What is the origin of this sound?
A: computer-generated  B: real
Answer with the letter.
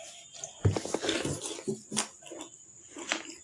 B